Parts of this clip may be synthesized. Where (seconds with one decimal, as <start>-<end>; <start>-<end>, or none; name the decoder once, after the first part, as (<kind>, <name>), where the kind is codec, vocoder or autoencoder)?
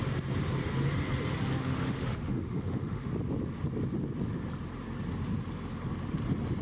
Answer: 1.6-3.1 (autoencoder, DAC-VAE)